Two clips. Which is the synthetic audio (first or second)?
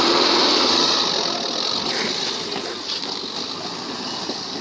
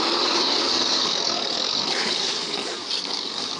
second